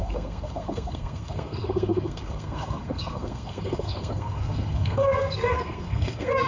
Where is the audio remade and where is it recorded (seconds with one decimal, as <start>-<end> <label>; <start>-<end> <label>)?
0.0-6.5 remade